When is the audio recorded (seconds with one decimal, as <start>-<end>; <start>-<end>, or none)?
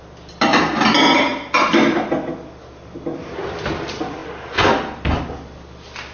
0.0-6.1